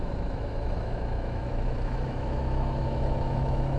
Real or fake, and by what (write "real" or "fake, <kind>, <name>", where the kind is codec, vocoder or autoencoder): fake, autoencoder, DAC-VAE